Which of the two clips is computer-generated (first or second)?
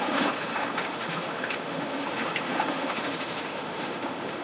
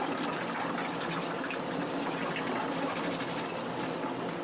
first